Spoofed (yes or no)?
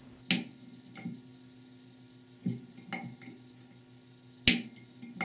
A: no